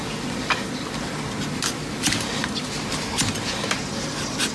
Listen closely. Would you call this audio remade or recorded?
recorded